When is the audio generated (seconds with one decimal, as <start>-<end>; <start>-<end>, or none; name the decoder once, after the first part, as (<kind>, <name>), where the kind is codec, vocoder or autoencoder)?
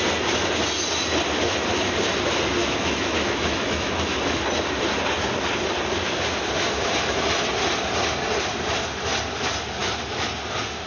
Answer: 2.6-3.9 (autoencoder, DAC-VAE)